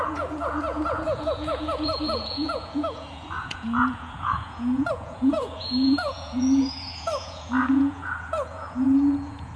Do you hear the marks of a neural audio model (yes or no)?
yes